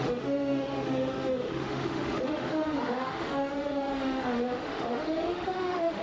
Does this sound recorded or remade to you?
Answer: remade